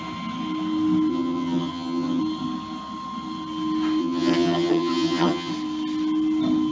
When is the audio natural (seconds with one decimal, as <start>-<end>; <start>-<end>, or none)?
0.0-1.1; 2.2-4.0; 5.5-6.7